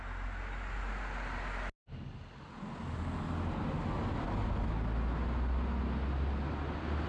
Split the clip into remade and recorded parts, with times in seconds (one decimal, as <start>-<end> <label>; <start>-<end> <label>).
0.0-1.8 recorded; 1.8-2.6 remade; 2.6-7.1 recorded